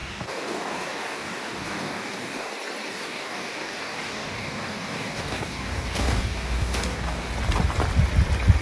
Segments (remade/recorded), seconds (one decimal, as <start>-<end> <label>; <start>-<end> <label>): 0.0-2.5 remade; 2.5-2.9 recorded; 2.9-7.3 remade; 7.3-8.6 recorded